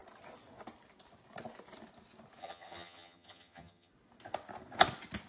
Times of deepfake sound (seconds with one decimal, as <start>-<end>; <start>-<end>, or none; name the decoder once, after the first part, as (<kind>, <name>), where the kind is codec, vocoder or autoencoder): 2.4-3.9 (vocoder, HiFi-GAN)